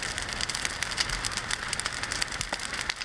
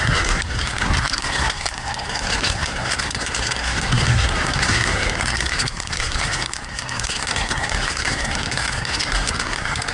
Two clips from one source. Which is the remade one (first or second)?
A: second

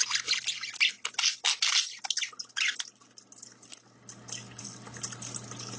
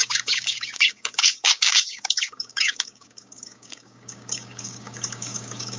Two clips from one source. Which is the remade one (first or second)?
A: second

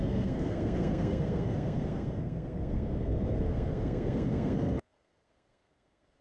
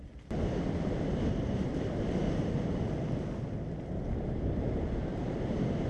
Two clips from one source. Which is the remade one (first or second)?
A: first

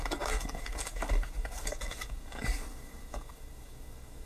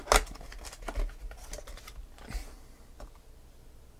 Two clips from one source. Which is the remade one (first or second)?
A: first